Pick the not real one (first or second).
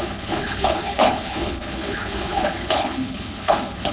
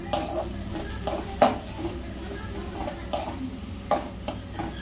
first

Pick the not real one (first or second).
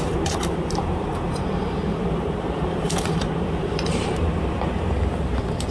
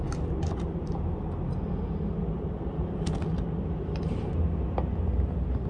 first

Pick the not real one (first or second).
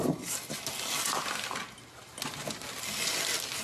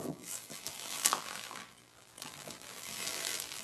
second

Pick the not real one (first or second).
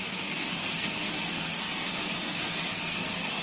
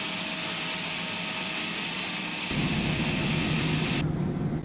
first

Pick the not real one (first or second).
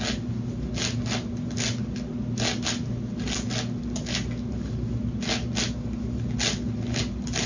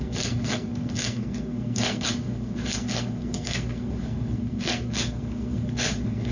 second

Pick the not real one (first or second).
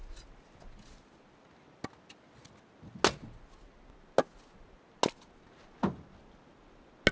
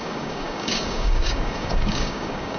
second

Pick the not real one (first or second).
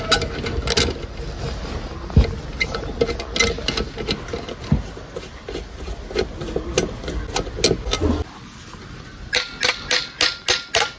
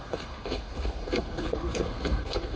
second